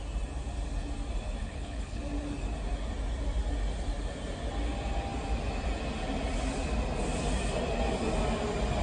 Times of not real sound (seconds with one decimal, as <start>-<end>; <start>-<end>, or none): 1.4-2.0